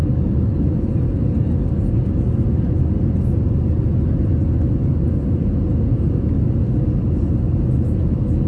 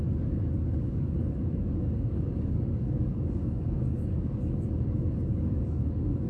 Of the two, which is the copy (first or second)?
second